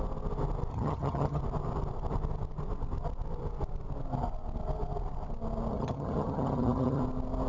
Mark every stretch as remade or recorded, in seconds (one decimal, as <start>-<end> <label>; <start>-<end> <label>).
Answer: 0.0-0.7 recorded; 0.7-1.4 remade; 1.4-5.7 recorded; 5.7-7.0 remade; 7.0-7.5 recorded